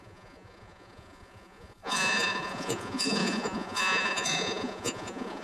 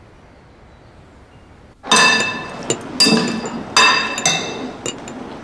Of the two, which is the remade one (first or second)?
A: first